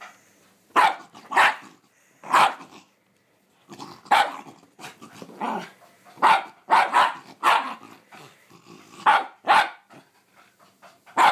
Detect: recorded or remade recorded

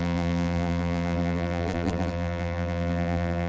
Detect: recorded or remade remade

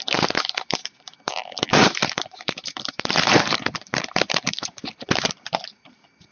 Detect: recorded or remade remade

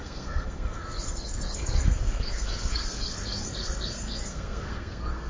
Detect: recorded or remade remade